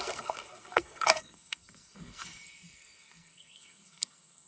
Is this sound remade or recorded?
remade